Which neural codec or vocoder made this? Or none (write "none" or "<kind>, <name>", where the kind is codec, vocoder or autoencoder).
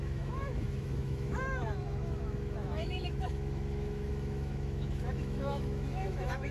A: autoencoder, DAC-VAE